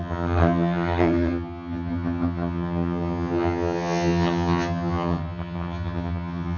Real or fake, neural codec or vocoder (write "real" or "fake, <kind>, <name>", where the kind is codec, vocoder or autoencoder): fake, vocoder, HiFi-GAN